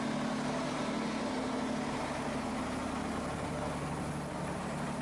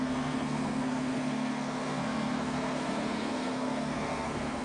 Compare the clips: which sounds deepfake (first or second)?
second